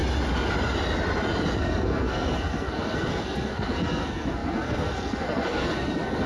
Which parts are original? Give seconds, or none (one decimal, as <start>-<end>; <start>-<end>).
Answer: 0.0-1.6